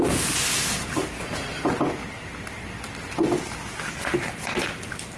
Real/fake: real